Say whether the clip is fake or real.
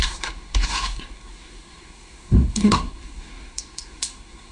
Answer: fake